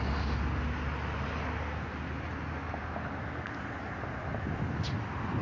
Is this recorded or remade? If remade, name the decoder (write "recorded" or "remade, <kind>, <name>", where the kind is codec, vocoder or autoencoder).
recorded